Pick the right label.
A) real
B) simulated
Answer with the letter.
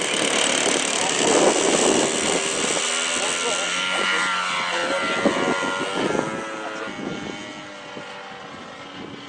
A